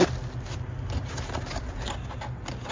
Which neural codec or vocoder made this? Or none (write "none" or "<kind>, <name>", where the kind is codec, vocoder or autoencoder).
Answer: none